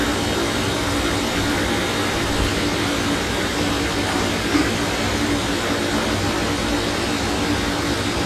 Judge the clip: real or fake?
real